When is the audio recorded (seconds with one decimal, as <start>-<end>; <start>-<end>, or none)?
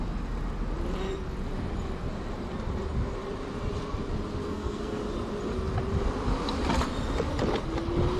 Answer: 0.0-4.4; 5.0-8.2